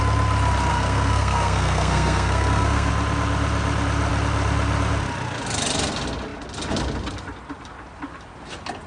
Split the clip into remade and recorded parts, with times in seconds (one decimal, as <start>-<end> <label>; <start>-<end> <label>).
0.0-0.7 recorded; 0.7-2.9 remade; 2.9-8.9 recorded